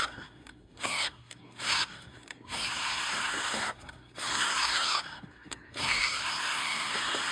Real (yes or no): no